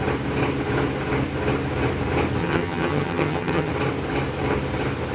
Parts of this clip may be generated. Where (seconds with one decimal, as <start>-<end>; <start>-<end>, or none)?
2.4-3.7